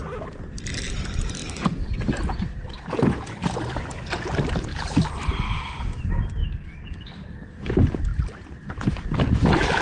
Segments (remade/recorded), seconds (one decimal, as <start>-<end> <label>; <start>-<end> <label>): 0.0-1.4 recorded; 1.4-1.9 remade; 1.9-6.4 recorded; 6.4-7.7 remade; 7.7-9.8 recorded